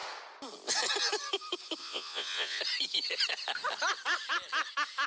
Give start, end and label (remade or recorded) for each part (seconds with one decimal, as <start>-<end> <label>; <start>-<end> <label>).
0.0-1.8 recorded; 1.8-2.6 remade; 2.6-5.1 recorded